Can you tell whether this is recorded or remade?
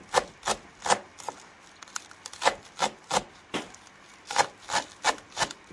recorded